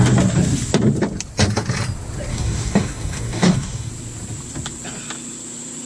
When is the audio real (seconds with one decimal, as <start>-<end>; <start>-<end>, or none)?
0.0-2.3; 3.9-5.9